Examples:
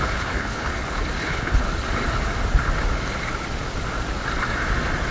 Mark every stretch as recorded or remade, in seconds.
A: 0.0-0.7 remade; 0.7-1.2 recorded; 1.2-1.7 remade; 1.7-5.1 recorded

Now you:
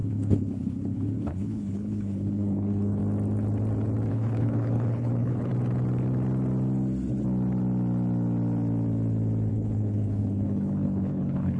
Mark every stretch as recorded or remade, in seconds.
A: 0.0-3.0 remade; 3.0-4.1 recorded; 4.1-5.5 remade; 5.5-9.5 recorded; 9.5-11.6 remade

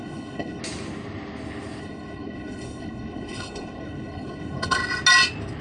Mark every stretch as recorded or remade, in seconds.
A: 0.0-0.6 remade; 0.6-1.8 recorded; 1.8-4.8 remade; 4.8-5.6 recorded

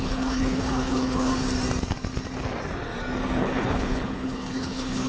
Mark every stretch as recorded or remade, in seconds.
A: 0.0-1.3 remade; 1.3-3.4 recorded; 3.4-5.1 remade